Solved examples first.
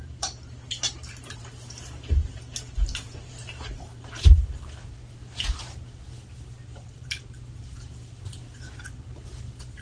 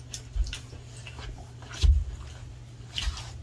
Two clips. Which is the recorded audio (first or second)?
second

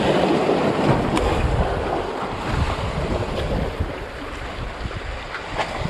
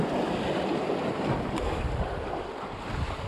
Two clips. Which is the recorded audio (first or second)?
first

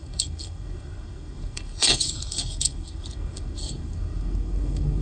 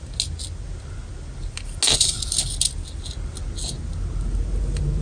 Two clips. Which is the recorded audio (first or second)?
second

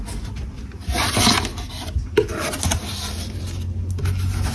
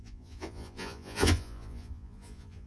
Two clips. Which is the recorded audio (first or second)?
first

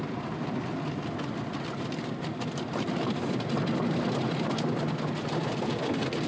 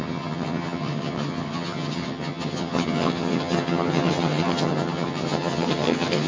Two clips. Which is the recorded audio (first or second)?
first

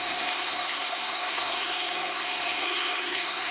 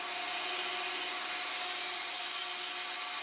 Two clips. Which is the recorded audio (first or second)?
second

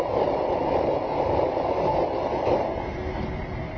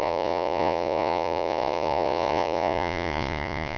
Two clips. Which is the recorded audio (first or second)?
first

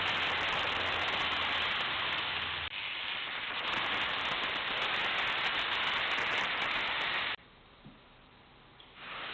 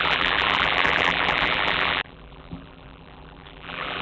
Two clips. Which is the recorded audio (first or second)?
first